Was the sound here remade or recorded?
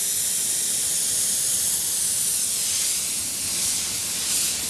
recorded